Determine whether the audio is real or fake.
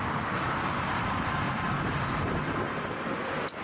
real